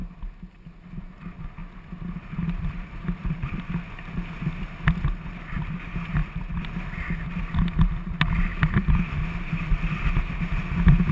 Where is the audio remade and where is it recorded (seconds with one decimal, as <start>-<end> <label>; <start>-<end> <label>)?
0.0-1.6 recorded; 1.6-3.7 remade; 3.7-6.2 recorded; 6.2-6.7 remade; 6.7-8.5 recorded; 8.5-9.9 remade; 9.9-11.1 recorded